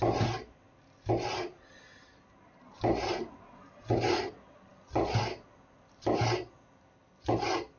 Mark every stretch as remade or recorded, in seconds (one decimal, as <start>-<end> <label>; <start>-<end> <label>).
0.0-7.8 recorded